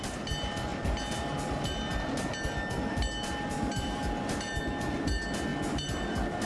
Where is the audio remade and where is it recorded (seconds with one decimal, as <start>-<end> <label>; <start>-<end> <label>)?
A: 0.0-6.5 recorded